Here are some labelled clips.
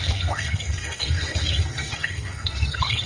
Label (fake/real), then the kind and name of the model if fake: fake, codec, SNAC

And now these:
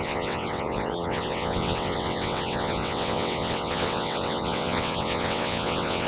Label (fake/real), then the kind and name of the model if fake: fake, vocoder, WaveNeXt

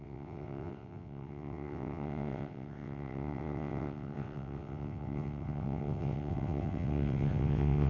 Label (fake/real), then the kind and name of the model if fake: fake, vocoder, WaveNeXt